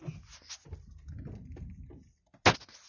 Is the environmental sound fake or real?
real